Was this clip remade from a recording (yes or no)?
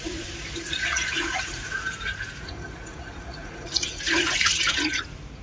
yes